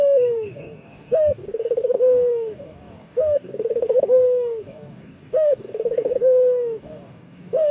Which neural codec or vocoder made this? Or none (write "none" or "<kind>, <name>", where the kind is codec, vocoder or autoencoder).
codec, DAC